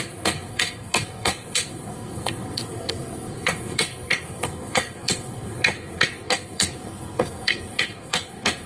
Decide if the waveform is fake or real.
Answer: fake